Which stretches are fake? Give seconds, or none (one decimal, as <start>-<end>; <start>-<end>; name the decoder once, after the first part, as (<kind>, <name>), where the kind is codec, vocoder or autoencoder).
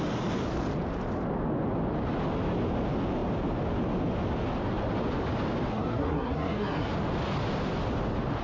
5.7-6.9 (codec, SNAC)